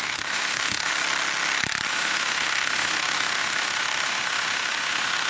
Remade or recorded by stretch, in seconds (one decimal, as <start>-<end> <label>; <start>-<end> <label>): 0.0-0.9 remade; 0.9-1.9 recorded; 1.9-5.3 remade